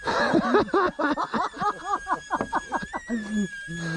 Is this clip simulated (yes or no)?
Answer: no